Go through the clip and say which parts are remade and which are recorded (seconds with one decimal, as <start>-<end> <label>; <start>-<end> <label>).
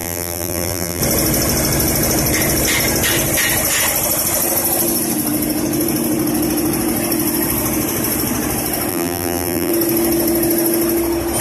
0.0-1.0 remade; 1.0-8.9 recorded; 8.9-9.7 remade; 9.7-11.4 recorded